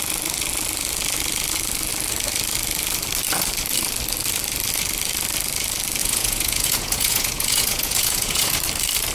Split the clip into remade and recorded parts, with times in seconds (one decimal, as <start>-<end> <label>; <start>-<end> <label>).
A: 0.0-6.0 recorded; 6.0-8.6 remade; 8.6-9.1 recorded